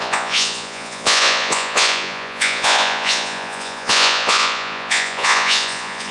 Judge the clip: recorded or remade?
remade